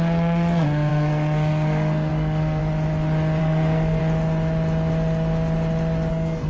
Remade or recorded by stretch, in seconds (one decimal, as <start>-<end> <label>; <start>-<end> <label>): 0.0-2.6 remade; 2.6-3.4 recorded; 3.4-4.0 remade; 4.0-6.1 recorded; 6.1-6.5 remade